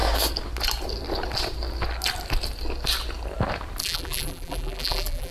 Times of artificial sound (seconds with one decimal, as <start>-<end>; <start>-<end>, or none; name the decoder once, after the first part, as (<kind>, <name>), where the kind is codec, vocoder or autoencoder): 3.8-5.3 (vocoder, BigVGAN v2)